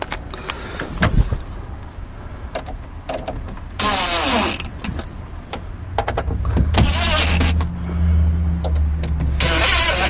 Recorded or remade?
recorded